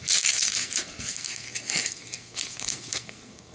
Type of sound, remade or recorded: remade